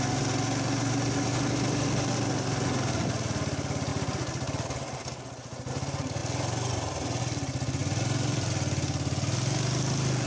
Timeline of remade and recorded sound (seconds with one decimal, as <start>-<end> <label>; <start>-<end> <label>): 0.0-7.8 recorded; 7.8-8.5 remade; 8.5-10.3 recorded